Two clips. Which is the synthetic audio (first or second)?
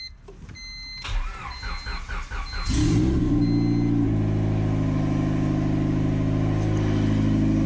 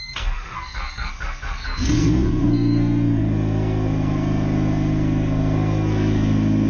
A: second